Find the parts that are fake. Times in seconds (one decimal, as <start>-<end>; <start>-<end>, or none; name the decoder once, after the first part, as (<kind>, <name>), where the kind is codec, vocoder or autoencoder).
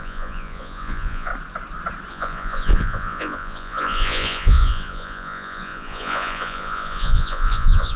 0.0-1.3 (vocoder, Vocos); 2.1-8.0